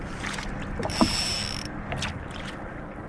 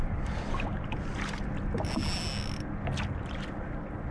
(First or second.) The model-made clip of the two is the first